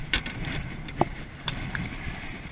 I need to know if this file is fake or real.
fake